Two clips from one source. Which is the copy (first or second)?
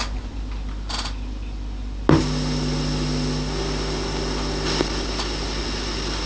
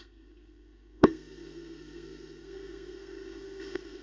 second